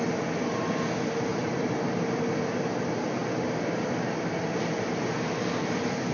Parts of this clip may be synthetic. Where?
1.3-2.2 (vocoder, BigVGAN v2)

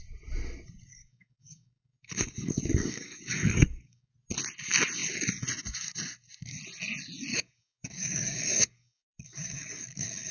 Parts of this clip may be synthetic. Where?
0.9-4.1 (codec, DAC); 7.3-10.3

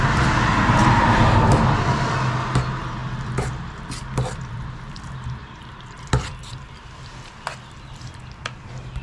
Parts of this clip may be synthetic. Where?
3.0-7.3 (vocoder, BigVGAN v2)

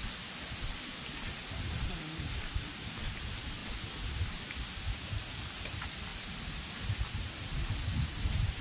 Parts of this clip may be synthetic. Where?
none

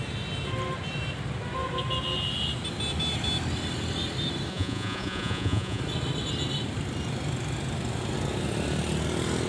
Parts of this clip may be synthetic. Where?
4.5-5.8 (vocoder, Vocos)